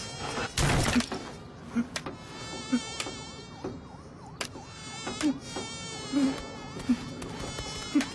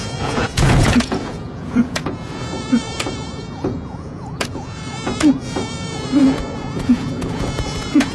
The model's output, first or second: second